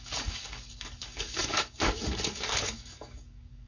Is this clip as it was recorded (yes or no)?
no